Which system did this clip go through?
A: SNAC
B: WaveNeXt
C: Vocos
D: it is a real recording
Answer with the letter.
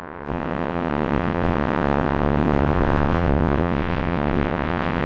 B